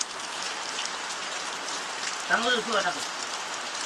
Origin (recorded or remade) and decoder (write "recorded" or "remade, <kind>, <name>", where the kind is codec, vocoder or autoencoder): recorded